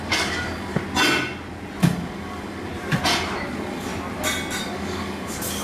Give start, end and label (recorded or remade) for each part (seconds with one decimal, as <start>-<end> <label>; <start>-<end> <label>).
0.0-0.8 remade; 0.8-1.8 recorded; 1.8-2.7 remade; 2.7-3.5 recorded; 3.5-3.9 remade; 3.9-4.6 recorded; 4.6-5.6 remade